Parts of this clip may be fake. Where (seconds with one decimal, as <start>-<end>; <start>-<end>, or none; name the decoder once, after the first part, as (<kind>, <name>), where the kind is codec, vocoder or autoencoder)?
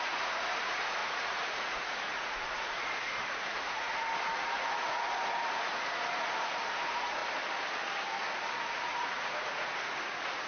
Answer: 0.0-7.2 (vocoder, Vocos); 8.4-10.5